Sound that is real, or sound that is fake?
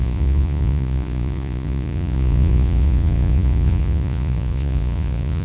fake